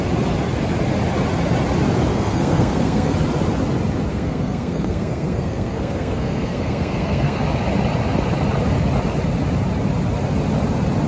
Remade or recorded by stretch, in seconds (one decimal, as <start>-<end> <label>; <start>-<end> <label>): 0.0-2.1 recorded; 2.1-3.1 remade; 3.1-4.1 recorded; 4.1-7.4 remade; 7.4-11.1 recorded